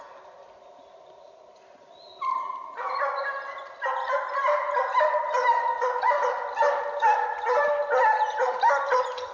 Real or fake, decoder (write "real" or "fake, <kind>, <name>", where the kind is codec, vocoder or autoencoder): real